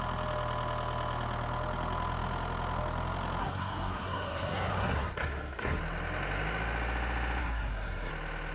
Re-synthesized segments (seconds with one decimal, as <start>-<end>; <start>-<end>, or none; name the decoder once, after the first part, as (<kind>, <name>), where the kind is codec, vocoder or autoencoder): 3.4-5.8 (codec, SNAC); 7.4-8.1